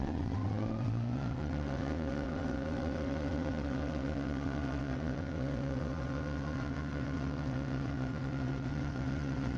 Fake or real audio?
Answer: fake